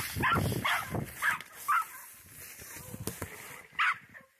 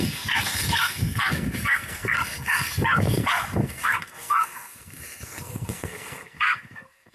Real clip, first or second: first